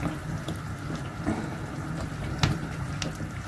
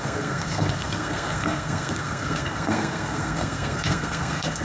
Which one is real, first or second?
first